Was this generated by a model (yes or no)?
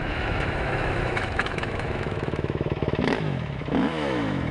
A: yes